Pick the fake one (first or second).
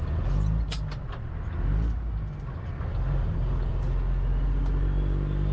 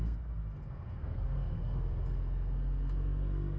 second